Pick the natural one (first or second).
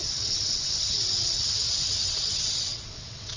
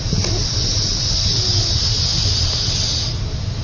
second